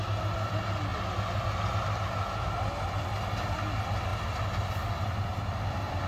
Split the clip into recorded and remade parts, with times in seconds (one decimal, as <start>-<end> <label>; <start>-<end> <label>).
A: 0.0-6.1 recorded